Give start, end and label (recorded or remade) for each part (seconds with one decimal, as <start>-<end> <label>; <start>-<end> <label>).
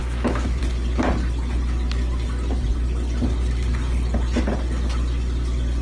0.0-0.6 remade; 0.6-5.8 recorded